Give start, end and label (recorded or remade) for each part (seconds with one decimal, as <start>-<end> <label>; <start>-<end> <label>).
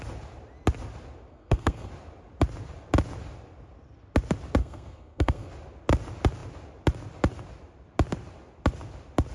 0.0-1.3 recorded; 1.3-1.9 remade; 1.9-4.6 recorded; 4.6-5.5 remade; 5.5-9.3 recorded